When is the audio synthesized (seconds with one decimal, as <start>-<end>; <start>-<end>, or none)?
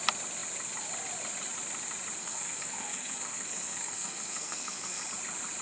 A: 2.2-5.0